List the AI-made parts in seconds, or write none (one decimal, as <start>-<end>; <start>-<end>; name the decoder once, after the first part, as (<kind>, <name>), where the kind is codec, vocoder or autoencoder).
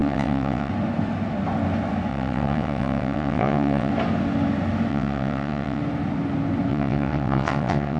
0.0-0.7 (vocoder, WaveNeXt); 2.1-3.9; 4.9-5.8; 6.7-8.0